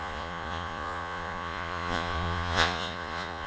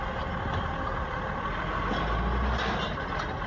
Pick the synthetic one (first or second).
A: first